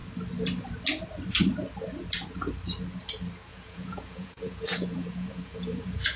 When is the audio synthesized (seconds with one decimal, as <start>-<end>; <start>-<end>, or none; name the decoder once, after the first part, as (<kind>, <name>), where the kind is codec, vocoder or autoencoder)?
3.5-6.2 (vocoder, Vocos)